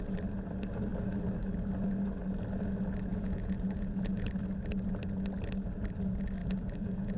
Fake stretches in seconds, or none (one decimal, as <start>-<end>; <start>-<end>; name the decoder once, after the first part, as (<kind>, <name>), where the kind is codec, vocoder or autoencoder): 3.1-4.3 (vocoder, Vocos); 6.4-7.2